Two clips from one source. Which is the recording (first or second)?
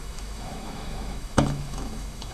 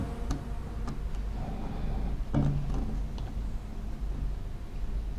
second